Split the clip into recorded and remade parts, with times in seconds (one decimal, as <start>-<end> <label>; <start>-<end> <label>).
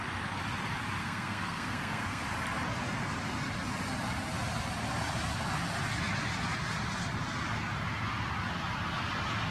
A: 0.0-1.0 recorded; 1.0-2.2 remade; 2.2-9.5 recorded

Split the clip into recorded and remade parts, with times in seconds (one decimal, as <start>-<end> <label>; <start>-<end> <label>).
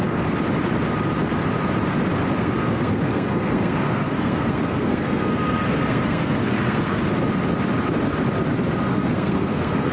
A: 0.0-2.4 recorded; 2.4-7.0 remade; 7.0-8.9 recorded; 8.9-9.9 remade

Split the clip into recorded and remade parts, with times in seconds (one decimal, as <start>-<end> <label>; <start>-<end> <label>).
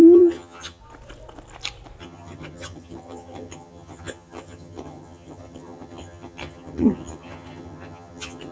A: 0.0-0.8 remade; 0.8-2.0 recorded; 2.0-8.5 remade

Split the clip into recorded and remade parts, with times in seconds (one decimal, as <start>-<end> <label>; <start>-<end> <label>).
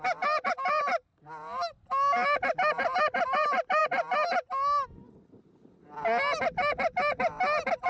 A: 0.0-7.9 recorded